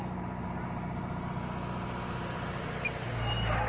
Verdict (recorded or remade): recorded